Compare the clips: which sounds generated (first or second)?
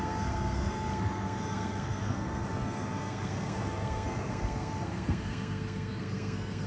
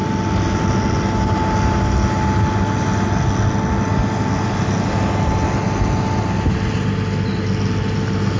first